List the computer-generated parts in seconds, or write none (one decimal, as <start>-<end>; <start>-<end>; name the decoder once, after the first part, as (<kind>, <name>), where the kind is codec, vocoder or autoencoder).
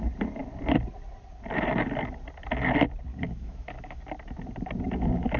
3.1-4.0 (autoencoder, DAC-VAE)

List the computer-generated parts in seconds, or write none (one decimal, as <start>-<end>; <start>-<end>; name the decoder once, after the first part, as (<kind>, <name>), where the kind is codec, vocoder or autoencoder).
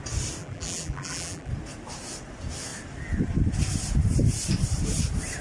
0.4-1.5 (vocoder, BigVGAN v2)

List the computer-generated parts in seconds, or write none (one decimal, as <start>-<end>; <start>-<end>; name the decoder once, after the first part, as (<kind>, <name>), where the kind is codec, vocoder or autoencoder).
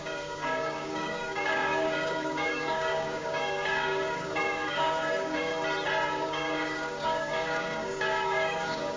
0.0-5.5 (codec, DAC); 6.1-9.0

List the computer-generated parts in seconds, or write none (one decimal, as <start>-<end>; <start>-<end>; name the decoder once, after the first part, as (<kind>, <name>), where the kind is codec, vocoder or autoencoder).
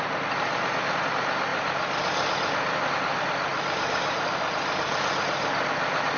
3.5-4.5 (vocoder, BigVGAN v2)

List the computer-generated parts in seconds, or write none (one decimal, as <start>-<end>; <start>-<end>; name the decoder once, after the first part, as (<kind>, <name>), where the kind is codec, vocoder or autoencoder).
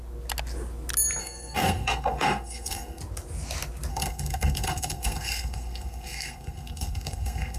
1.2-3.0 (codec, SNAC); 3.9-7.6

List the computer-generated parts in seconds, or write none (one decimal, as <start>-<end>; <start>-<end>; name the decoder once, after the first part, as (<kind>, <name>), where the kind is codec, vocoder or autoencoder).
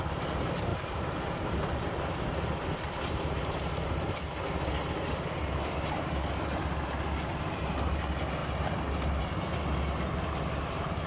0.7-3.8 (vocoder, BigVGAN v2)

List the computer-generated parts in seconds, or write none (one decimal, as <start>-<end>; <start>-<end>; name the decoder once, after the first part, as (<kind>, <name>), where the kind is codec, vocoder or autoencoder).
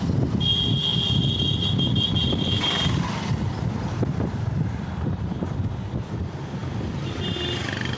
0.9-5.7 (vocoder, BigVGAN v2); 6.6-7.6